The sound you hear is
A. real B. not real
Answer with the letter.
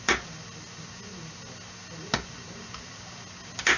A